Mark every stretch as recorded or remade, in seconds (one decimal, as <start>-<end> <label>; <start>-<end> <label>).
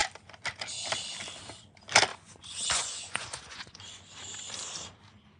0.0-2.1 recorded; 2.1-3.8 remade; 3.8-5.4 recorded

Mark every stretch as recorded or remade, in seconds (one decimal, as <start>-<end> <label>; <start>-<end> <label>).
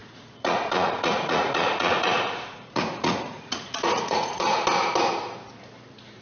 0.0-4.5 remade; 4.5-6.2 recorded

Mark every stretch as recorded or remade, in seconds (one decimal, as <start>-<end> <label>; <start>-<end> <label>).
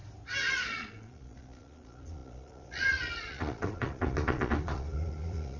0.0-0.5 recorded; 0.5-5.6 remade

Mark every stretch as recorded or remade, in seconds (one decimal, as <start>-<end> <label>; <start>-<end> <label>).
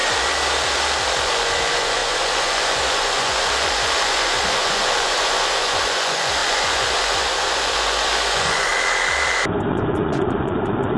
0.0-1.2 recorded; 1.2-8.7 remade; 8.7-9.7 recorded; 9.7-11.0 remade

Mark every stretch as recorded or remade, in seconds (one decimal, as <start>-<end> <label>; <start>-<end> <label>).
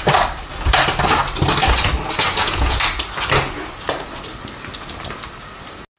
0.0-2.3 recorded; 2.3-2.8 remade; 2.8-6.0 recorded